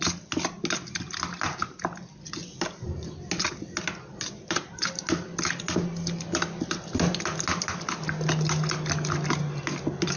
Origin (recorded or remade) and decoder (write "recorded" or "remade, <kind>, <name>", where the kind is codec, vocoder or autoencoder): recorded